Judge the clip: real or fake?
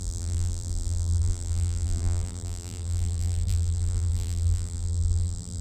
fake